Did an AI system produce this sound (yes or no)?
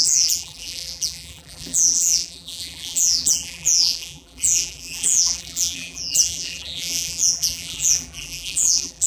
yes